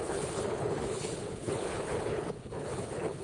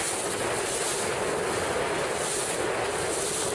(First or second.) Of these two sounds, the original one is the second